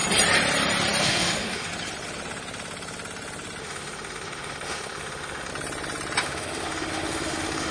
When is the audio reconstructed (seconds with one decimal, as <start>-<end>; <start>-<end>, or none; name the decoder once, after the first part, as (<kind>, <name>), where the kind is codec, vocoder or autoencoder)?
1.0-1.7 (autoencoder, DAC-VAE); 3.6-5.5; 6.2-7.7